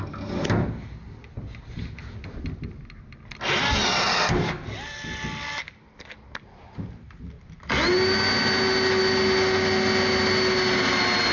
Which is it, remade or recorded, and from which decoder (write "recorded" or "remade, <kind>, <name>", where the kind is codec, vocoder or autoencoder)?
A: recorded